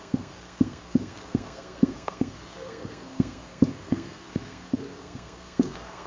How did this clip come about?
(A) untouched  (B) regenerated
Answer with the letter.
B